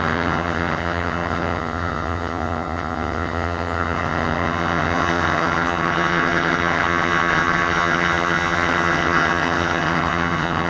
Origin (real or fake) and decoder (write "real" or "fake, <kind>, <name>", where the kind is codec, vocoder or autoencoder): fake, vocoder, HiFi-GAN